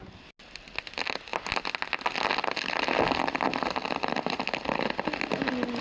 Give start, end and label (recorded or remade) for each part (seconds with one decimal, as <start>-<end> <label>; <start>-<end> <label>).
0.0-5.8 recorded